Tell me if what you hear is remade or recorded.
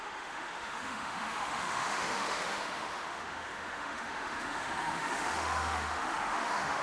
remade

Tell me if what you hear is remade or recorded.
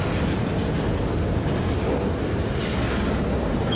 recorded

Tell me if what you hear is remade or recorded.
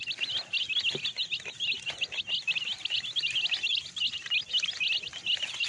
recorded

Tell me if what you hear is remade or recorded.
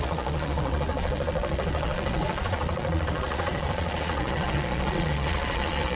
remade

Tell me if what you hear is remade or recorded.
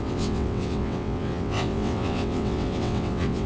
remade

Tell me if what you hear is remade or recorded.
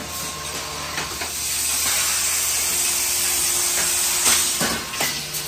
recorded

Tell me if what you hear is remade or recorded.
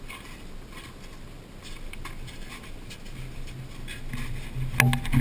recorded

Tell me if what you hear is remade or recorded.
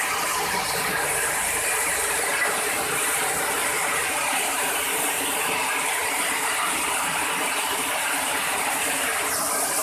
remade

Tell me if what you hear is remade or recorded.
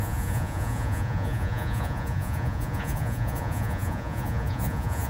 remade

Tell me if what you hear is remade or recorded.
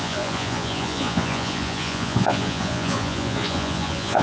remade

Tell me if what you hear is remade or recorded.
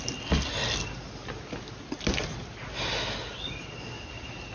recorded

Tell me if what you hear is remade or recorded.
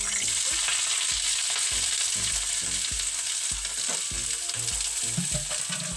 recorded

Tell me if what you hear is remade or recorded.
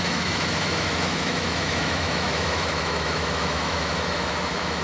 remade